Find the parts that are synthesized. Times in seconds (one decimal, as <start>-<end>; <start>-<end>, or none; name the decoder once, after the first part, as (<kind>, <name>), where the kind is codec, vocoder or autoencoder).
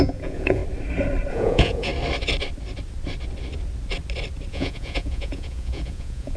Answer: 0.0-0.6 (vocoder, Vocos); 1.3-1.9; 4.5-6.4